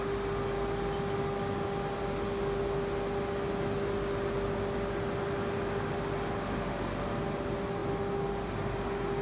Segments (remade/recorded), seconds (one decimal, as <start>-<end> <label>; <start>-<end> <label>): 0.0-9.2 recorded